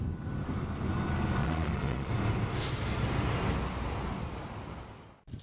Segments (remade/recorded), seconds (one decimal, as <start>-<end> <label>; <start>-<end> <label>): 0.0-1.4 recorded; 1.4-2.1 remade; 2.1-5.4 recorded

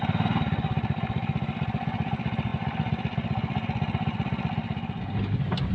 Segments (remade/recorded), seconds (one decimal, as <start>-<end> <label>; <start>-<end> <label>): 0.0-5.7 recorded